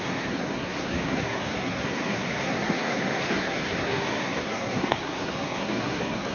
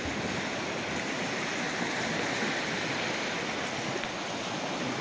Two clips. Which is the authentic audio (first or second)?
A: second